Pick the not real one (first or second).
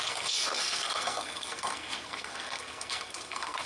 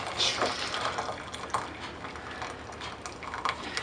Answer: first